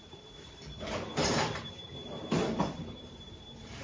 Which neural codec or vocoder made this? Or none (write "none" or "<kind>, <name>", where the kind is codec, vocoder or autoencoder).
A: vocoder, BigVGAN v2